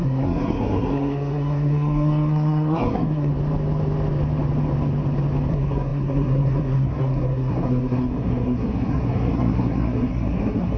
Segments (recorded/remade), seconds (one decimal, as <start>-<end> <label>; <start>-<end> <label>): 0.0-3.3 remade; 3.3-5.5 recorded; 5.5-10.8 remade